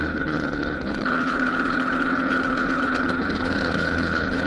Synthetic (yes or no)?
yes